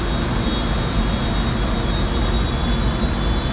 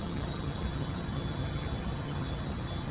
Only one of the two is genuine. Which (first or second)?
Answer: first